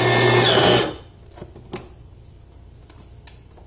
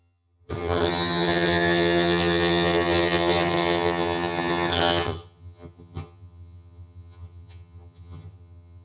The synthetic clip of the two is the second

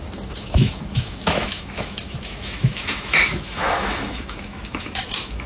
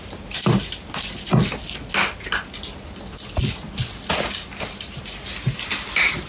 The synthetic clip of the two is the first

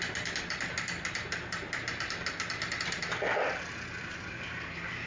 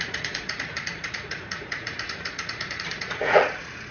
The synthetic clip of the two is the second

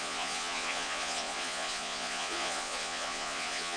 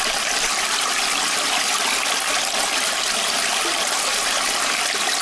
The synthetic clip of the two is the first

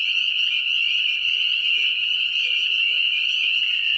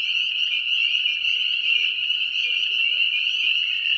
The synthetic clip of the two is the first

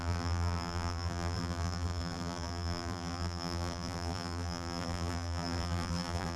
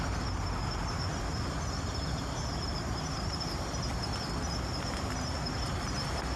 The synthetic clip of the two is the first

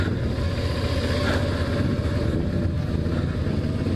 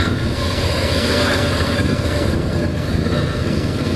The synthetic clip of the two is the second